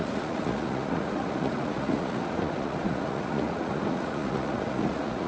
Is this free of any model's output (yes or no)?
no